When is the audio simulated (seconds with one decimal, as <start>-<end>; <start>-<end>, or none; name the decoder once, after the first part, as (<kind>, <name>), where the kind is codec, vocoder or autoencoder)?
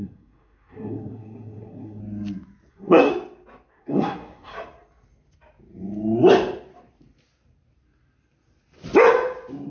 0.0-2.0 (codec, SNAC); 2.7-3.1; 3.7-4.5